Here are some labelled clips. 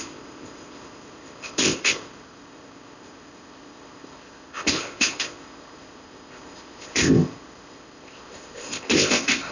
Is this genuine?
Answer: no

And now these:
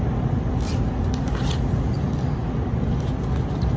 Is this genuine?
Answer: yes